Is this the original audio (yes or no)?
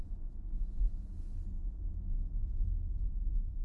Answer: yes